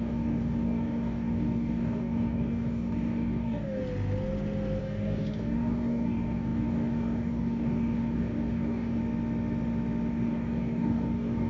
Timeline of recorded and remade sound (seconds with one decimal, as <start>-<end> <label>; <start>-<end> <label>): 0.0-3.8 remade; 3.8-4.8 recorded; 4.8-9.0 remade; 9.0-10.1 recorded; 10.1-11.5 remade